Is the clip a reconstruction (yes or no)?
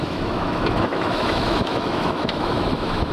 yes